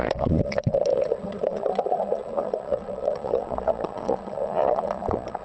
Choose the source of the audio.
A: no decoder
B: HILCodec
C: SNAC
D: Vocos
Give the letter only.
D